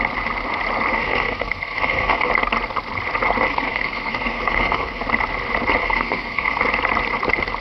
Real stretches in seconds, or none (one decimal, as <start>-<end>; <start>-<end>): 0.0-0.9; 2.3-3.5; 5.0-5.8; 6.6-7.6